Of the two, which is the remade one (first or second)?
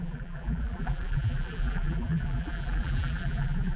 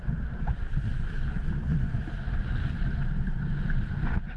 first